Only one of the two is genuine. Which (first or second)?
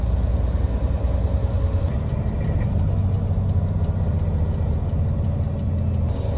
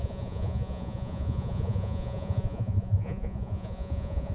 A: first